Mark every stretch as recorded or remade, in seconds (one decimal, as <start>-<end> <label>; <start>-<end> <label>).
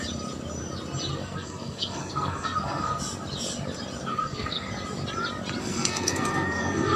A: 0.0-1.1 recorded; 1.1-3.0 remade; 3.0-4.1 recorded; 4.1-4.7 remade; 4.7-5.6 recorded; 5.6-7.0 remade